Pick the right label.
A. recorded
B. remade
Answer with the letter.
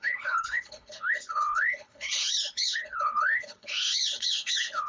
B